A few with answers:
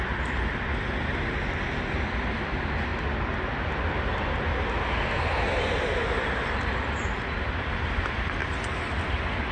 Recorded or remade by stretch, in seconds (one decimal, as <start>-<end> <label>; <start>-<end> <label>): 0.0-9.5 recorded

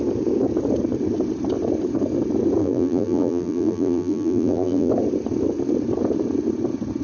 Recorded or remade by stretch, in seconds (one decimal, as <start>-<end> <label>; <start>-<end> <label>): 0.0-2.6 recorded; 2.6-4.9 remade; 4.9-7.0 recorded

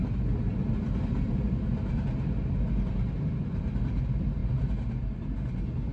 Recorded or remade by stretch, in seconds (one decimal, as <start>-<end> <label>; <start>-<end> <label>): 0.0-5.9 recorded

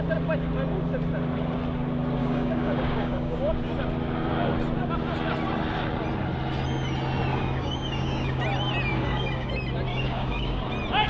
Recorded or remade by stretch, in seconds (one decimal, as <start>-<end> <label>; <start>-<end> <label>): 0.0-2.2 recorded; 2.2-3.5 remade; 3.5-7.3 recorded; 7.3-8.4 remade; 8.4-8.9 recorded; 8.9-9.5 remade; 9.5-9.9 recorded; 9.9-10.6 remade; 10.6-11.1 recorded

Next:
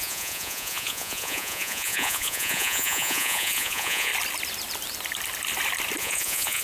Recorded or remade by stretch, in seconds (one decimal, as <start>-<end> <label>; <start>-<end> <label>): 0.0-4.1 remade; 4.1-6.0 recorded; 6.0-6.6 remade